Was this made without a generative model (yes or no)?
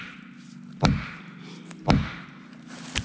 yes